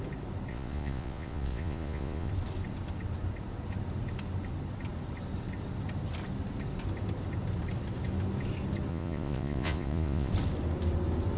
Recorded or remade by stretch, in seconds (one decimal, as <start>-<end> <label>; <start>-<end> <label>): 0.0-0.5 recorded; 0.5-2.3 remade; 2.3-8.9 recorded; 8.9-10.3 remade; 10.3-11.4 recorded

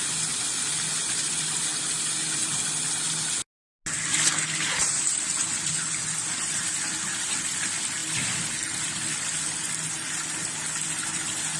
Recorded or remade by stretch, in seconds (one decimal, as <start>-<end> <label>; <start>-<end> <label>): 0.0-11.6 recorded

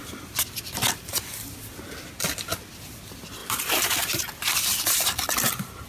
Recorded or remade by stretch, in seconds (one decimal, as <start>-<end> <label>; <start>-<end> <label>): 0.0-3.4 recorded; 3.4-4.6 remade; 4.6-5.9 recorded

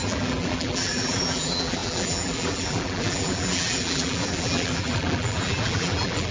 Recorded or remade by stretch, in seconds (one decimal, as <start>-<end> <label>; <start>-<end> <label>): 0.0-6.3 remade

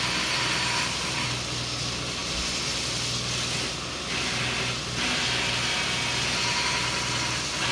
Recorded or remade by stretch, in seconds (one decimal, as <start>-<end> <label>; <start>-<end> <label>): 0.0-7.7 recorded